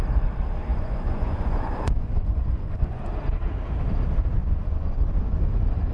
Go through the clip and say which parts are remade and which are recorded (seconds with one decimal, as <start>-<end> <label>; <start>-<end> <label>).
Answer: 0.0-0.7 recorded; 0.7-3.0 remade; 3.0-4.4 recorded; 4.4-5.2 remade; 5.2-5.9 recorded